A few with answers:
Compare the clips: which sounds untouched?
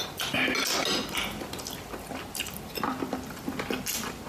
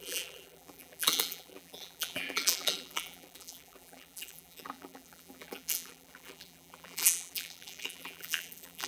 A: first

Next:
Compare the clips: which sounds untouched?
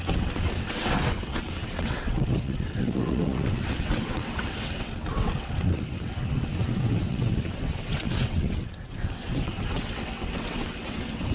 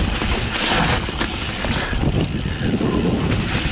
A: second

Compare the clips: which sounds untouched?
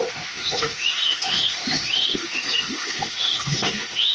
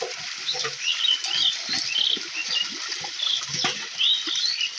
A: second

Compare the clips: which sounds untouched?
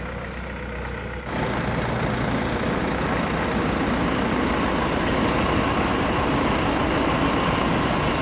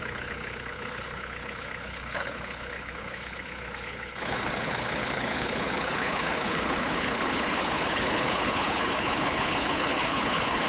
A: first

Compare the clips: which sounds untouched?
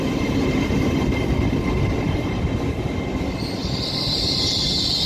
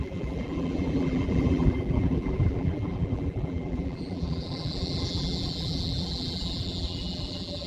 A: first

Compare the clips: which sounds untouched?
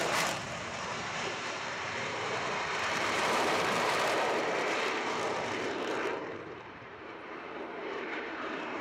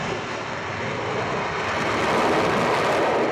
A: second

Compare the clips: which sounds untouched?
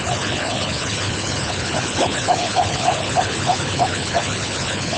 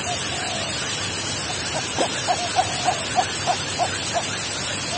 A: second